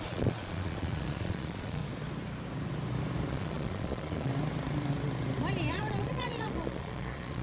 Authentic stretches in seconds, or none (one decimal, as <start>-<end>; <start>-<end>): 1.8-3.3; 4.3-5.7